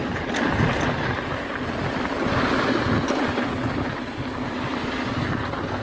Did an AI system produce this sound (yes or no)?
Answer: no